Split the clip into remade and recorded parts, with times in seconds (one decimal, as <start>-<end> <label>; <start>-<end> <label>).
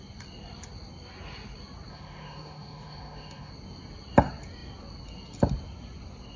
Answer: 0.0-1.9 recorded; 1.9-3.5 remade; 3.5-6.4 recorded